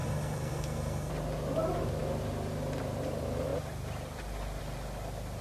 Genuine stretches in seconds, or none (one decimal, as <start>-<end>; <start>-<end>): 1.1-5.4